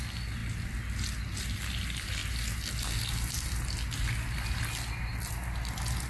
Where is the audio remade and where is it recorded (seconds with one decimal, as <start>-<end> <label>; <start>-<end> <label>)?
0.0-6.1 recorded